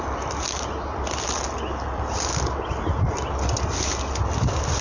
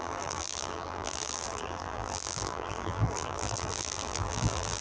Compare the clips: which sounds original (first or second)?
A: first